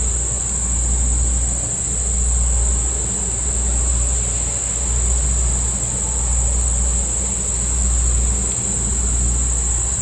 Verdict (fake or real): real